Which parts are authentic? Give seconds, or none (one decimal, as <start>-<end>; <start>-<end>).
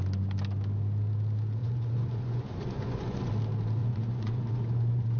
0.0-1.6; 3.3-3.8